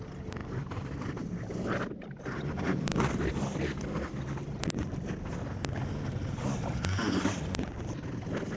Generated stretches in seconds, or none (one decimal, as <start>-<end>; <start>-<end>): 0.4-1.5